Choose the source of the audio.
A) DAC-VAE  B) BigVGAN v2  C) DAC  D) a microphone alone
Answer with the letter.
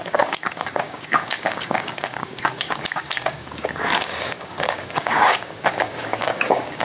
C